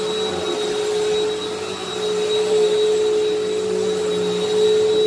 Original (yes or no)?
yes